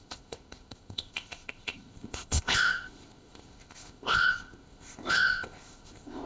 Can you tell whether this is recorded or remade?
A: remade